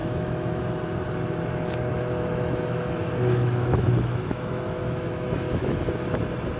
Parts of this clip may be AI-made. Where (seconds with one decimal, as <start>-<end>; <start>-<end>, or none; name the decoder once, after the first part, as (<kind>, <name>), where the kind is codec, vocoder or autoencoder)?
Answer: 0.0-0.6 (autoencoder, DAC-VAE); 1.9-5.8

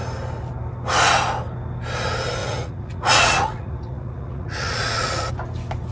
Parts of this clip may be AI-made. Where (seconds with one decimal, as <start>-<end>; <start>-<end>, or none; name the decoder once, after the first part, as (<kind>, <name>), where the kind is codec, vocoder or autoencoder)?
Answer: 2.4-5.3 (vocoder, Vocos)

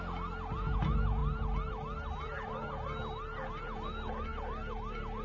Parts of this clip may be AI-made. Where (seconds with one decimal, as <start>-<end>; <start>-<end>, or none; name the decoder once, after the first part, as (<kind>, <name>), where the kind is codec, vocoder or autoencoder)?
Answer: none

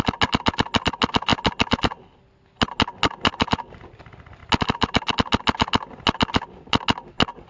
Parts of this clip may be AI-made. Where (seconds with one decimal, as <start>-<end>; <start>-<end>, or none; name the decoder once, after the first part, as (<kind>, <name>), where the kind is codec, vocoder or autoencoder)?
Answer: none

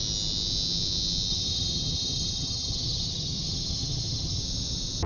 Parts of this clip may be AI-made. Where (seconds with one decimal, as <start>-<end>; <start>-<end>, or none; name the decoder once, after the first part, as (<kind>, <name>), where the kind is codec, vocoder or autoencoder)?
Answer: 1.3-4.4 (vocoder, HiFi-GAN)

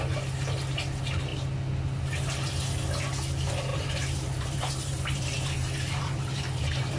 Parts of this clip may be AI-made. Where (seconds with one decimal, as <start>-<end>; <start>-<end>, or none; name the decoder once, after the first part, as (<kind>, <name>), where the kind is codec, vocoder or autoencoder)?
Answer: 3.7-7.0 (vocoder, BigVGAN v2)